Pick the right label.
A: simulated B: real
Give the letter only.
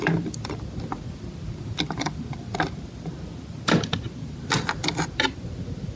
B